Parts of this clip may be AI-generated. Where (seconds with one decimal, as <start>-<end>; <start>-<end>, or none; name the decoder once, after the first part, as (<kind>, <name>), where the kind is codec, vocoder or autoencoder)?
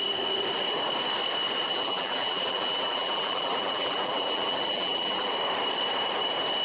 1.7-5.3 (vocoder, BigVGAN v2)